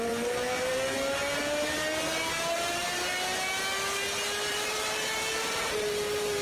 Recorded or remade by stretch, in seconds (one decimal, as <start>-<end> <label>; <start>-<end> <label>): 0.0-2.8 remade; 2.8-4.5 recorded; 4.5-6.4 remade